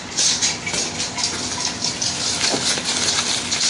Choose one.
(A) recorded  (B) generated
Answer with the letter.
A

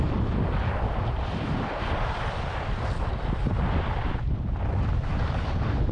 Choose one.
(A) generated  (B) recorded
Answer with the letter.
B